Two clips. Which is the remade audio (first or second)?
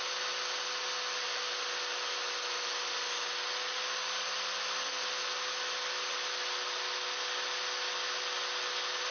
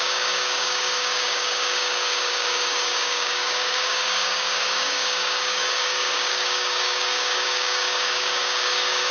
second